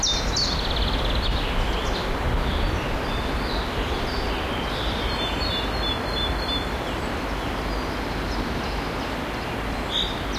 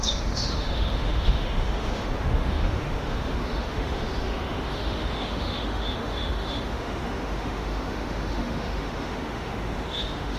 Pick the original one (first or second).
first